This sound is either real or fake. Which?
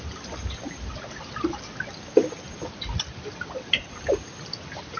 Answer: real